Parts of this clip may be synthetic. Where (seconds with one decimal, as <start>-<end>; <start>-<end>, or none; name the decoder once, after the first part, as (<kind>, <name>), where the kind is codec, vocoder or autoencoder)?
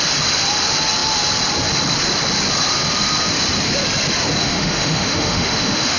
4.4-6.0 (autoencoder, DAC-VAE)